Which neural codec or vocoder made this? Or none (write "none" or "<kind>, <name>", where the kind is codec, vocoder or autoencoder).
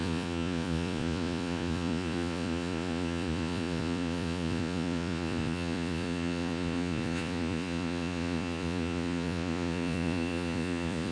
vocoder, Vocos